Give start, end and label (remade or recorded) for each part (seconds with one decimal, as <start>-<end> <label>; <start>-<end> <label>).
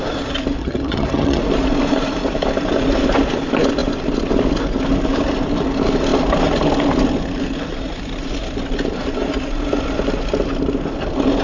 0.0-0.6 recorded; 0.6-1.4 remade; 1.4-11.4 recorded